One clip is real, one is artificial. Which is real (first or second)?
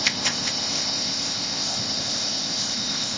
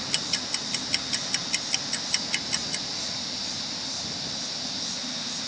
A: second